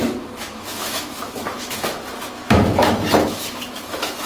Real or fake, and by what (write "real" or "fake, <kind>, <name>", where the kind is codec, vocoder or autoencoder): fake, autoencoder, DAC-VAE